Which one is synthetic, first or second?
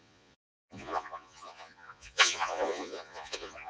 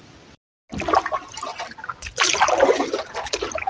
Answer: first